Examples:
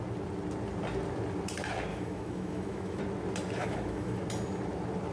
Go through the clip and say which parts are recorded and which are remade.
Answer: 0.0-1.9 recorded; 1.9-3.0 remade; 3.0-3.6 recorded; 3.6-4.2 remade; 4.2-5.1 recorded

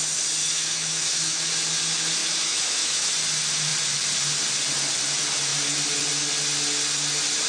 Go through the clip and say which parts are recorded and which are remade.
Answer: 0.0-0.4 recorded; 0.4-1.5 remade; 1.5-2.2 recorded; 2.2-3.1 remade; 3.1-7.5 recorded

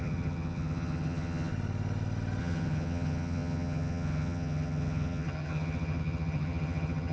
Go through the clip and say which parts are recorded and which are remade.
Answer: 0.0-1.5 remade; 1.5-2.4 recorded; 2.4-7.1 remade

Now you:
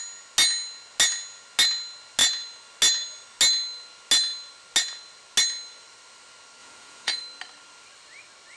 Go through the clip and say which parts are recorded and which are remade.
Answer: 0.0-6.6 recorded; 6.6-7.2 remade; 7.2-8.6 recorded

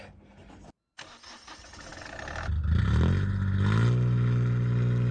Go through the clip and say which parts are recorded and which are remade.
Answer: 0.0-5.1 recorded